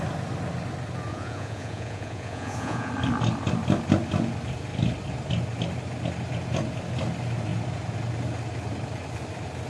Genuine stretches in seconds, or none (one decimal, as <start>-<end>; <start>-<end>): 0.0-1.1; 2.9-9.7